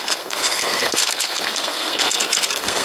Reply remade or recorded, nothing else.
remade